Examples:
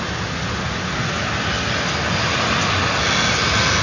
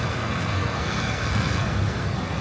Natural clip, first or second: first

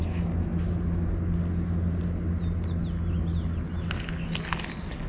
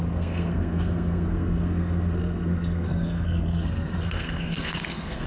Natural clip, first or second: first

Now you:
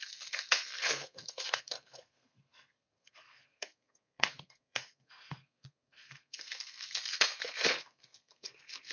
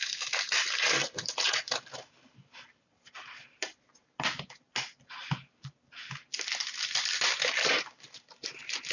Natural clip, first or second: second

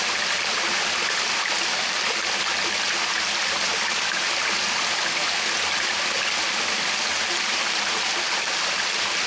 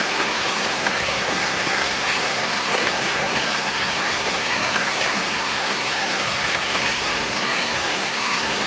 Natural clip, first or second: first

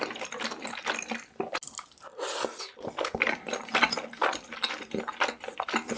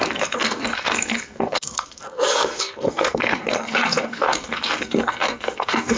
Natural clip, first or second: first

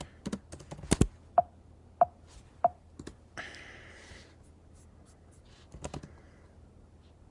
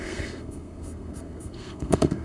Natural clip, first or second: first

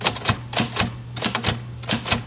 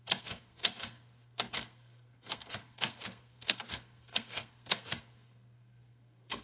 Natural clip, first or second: first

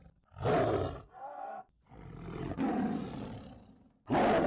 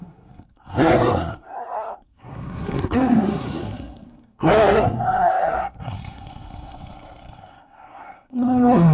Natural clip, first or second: first